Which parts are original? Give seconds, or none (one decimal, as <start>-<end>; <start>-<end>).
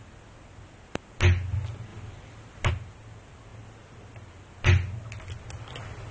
0.0-6.1